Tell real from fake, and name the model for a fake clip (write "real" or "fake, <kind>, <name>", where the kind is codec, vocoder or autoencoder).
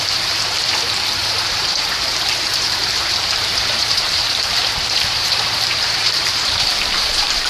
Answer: fake, vocoder, BigVGAN v2